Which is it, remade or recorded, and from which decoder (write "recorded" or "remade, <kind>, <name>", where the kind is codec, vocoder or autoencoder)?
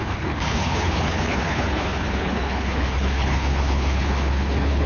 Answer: remade, codec, HILCodec